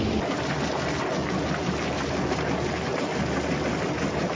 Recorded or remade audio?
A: recorded